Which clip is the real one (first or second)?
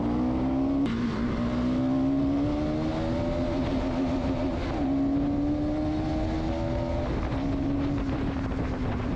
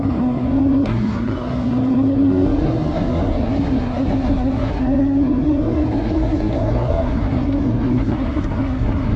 first